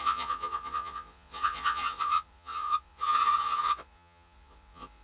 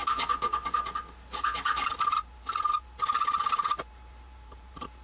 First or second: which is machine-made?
first